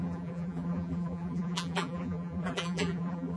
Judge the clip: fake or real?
fake